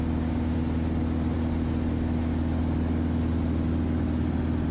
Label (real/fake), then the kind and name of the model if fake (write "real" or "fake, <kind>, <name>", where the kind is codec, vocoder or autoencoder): real